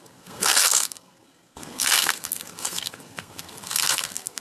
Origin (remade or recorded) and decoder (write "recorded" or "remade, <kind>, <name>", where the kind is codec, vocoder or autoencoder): remade, codec, SNAC